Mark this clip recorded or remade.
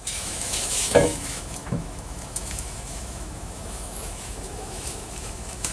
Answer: remade